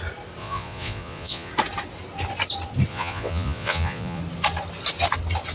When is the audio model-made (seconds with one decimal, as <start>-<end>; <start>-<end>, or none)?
0.4-1.5; 2.9-4.2